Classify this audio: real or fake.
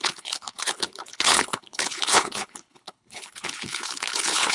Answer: fake